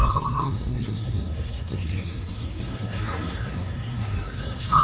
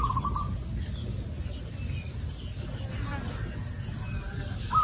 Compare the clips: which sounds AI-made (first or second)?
first